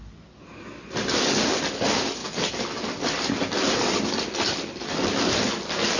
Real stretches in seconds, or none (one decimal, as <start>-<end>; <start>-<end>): 0.0-6.0